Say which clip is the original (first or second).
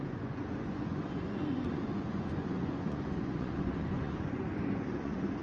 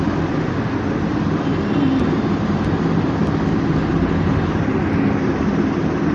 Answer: second